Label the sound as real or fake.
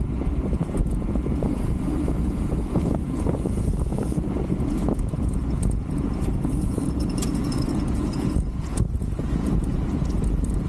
fake